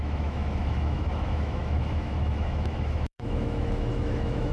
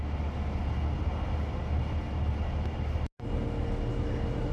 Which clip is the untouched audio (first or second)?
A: second